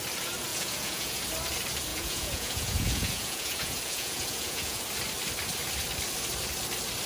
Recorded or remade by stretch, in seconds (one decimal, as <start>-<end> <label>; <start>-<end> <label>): 0.0-0.5 recorded; 0.5-1.2 remade; 1.2-1.9 recorded; 1.9-4.8 remade; 4.8-7.1 recorded